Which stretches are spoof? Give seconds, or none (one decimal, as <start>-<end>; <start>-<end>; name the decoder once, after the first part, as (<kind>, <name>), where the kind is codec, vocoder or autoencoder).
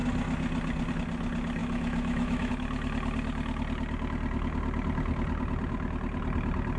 1.6-2.5 (autoencoder, DAC-VAE)